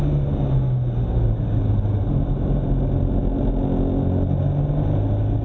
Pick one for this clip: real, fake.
real